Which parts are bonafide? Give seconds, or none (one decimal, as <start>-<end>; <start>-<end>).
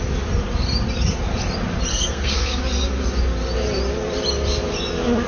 0.0-1.9; 2.6-5.3